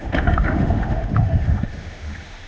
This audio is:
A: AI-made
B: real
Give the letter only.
A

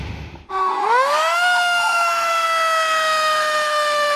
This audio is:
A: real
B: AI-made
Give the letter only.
B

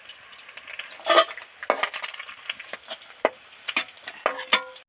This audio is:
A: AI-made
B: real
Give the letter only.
B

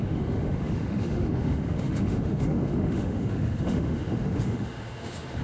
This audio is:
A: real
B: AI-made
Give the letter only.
B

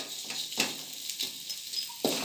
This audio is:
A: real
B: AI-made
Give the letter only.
A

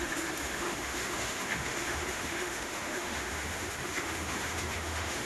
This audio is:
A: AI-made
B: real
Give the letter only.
A